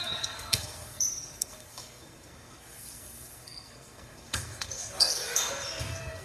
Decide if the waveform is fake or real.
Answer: fake